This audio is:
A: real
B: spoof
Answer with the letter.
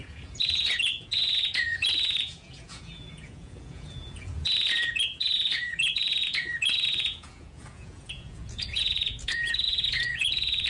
B